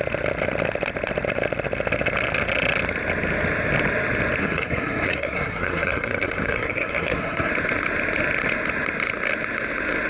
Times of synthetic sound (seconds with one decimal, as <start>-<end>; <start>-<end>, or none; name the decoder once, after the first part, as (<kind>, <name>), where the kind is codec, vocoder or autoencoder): 4.4-7.5 (codec, SNAC)